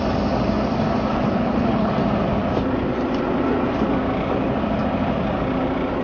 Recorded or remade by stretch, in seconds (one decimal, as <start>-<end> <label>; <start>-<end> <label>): 0.0-1.1 recorded; 1.1-1.9 remade; 1.9-6.0 recorded